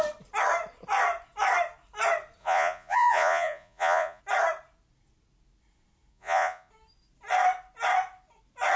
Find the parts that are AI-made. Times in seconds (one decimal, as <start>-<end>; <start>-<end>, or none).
2.4-4.2; 6.1-6.7